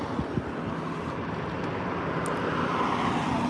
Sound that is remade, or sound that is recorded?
recorded